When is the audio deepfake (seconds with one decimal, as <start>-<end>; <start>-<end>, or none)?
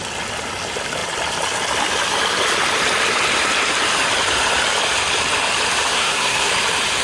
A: 5.9-6.5